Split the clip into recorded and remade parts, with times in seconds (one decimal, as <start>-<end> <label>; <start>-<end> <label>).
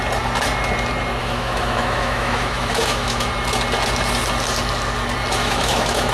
0.0-1.2 recorded; 1.2-3.3 remade; 3.3-5.4 recorded; 5.4-6.1 remade